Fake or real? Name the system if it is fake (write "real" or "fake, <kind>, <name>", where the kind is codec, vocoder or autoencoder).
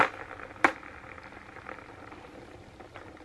real